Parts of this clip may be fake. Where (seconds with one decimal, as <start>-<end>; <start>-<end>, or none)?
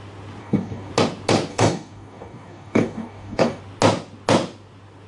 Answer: 0.4-0.9; 1.5-3.6